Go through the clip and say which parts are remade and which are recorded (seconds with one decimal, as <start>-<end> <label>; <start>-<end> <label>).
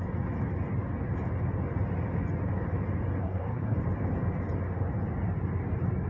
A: 0.0-3.2 recorded; 3.2-3.8 remade; 3.8-6.1 recorded